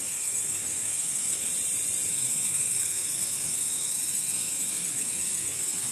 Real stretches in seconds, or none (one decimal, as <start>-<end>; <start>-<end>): 1.5-2.1